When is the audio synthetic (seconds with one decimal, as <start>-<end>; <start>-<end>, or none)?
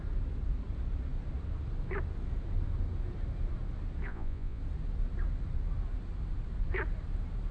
4.1-4.6